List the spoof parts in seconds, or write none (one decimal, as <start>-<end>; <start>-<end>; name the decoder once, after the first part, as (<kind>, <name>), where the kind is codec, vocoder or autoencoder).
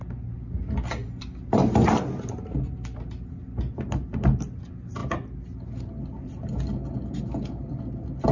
none